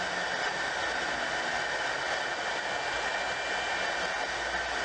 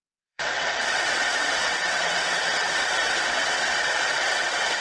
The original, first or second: first